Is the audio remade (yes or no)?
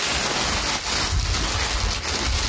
no